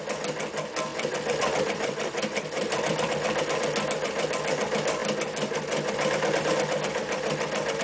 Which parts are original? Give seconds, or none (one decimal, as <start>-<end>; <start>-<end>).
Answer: 0.0-0.9; 3.4-7.8